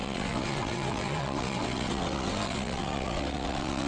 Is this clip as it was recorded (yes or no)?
no